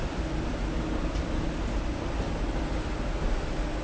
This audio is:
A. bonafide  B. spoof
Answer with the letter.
B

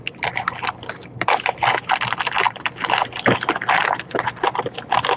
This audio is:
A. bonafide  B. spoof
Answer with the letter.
A